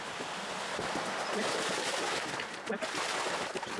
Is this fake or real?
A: real